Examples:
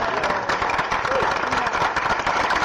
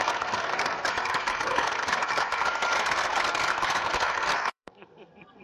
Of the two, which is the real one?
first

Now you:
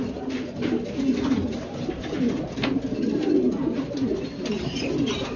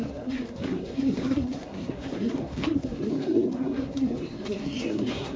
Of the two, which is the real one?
first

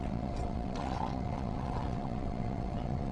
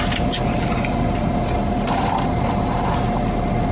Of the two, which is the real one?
second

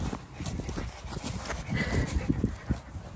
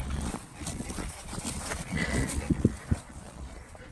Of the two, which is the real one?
first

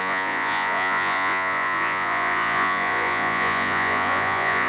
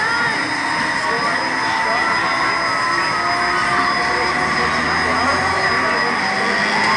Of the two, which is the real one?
second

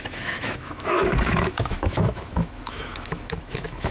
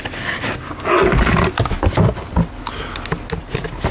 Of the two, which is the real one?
second